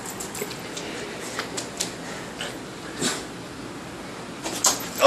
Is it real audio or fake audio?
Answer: real